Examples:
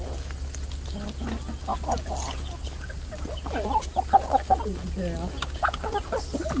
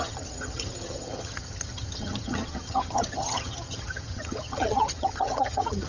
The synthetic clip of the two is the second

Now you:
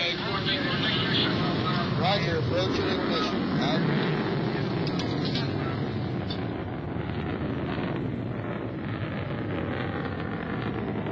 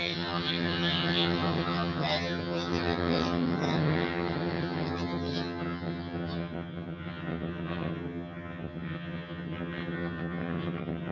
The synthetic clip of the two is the second